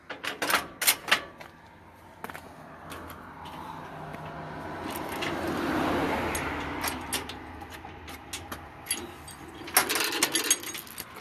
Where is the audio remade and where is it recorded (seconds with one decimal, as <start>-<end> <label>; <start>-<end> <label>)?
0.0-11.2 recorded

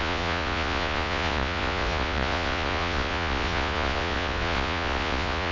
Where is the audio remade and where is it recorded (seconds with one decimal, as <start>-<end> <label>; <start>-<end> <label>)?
0.0-5.5 remade

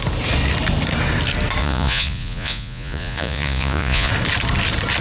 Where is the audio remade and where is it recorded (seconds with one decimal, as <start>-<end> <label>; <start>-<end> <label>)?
0.0-1.6 recorded; 1.6-4.1 remade; 4.1-5.0 recorded

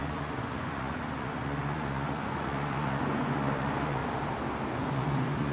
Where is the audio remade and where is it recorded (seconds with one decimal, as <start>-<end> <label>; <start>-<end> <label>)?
0.0-4.0 remade; 4.0-4.7 recorded; 4.7-5.5 remade

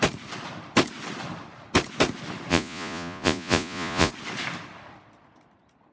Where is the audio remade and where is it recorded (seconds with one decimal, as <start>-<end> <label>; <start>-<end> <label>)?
0.0-2.5 recorded; 2.5-4.1 remade; 4.1-5.9 recorded